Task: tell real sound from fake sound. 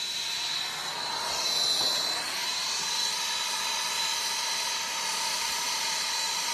real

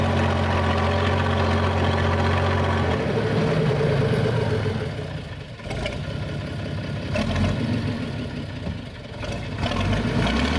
real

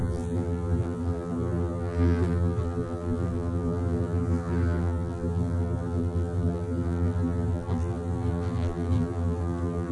fake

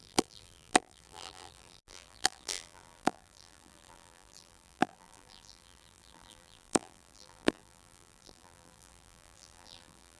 fake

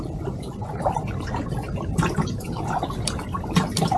fake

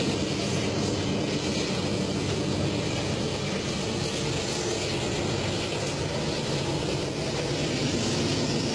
real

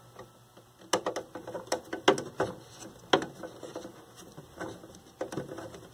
real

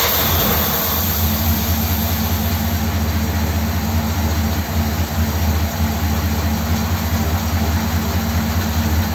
real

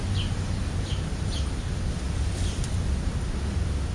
real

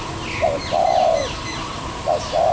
real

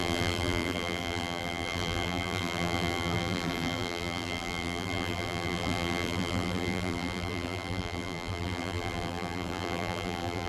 fake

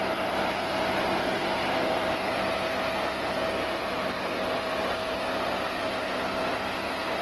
real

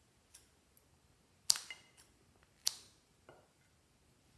real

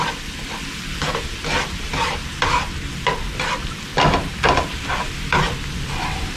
real